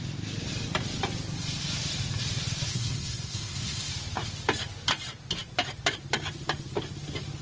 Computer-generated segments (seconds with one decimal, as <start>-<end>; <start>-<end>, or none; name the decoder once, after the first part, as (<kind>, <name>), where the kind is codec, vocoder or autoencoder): 2.7-3.9 (codec, SNAC)